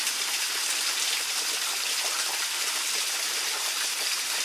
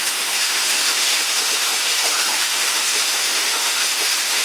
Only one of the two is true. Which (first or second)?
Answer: first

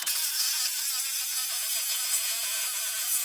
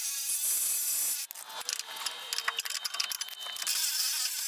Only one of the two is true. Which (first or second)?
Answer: second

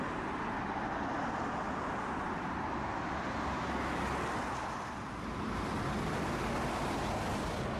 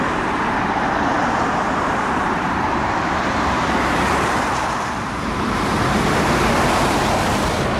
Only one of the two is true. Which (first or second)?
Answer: first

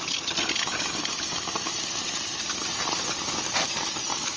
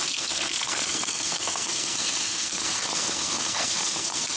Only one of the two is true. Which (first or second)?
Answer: first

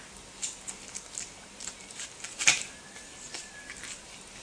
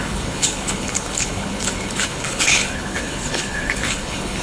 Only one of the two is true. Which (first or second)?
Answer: first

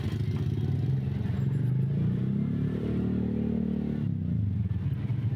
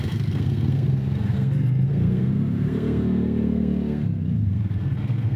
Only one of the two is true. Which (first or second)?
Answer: first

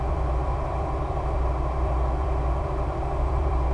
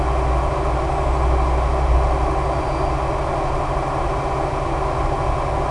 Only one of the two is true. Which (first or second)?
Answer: second